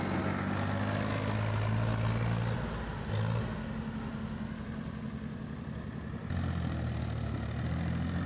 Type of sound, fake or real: real